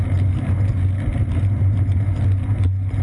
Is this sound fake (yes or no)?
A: no